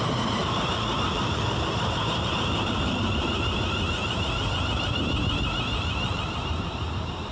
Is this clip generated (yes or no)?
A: yes